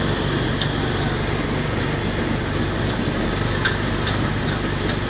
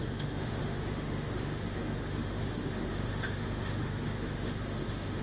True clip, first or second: first